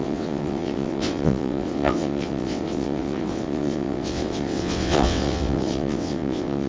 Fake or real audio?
fake